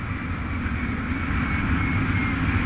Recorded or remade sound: recorded